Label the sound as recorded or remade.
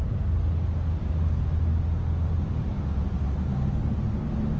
recorded